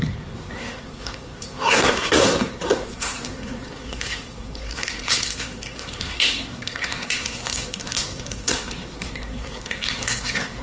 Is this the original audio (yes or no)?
no